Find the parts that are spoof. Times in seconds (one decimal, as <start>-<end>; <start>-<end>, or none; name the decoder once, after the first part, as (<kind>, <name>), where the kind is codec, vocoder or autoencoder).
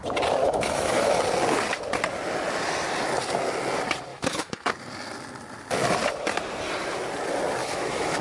0.4-1.2 (autoencoder, DAC-VAE); 4.1-4.7; 7.6-8.2